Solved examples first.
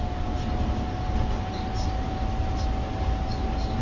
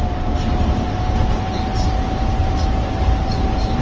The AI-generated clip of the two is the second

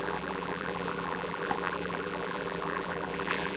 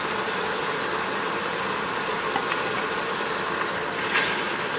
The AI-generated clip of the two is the first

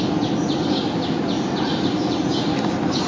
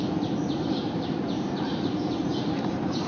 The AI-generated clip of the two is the second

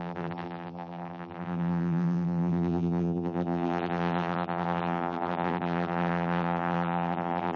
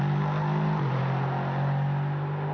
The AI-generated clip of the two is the first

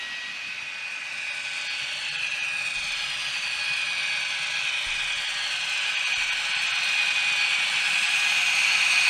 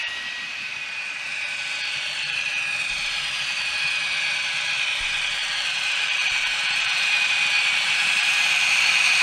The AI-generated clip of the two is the second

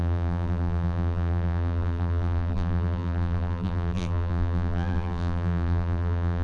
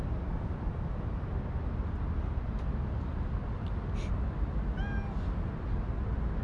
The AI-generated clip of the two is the first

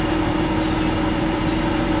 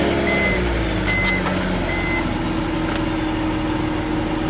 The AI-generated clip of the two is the first